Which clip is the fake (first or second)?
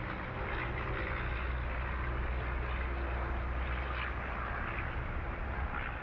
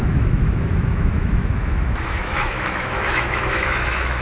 second